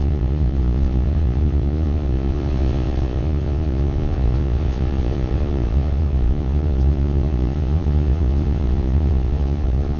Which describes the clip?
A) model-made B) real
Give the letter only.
A